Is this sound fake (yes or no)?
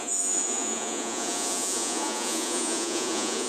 yes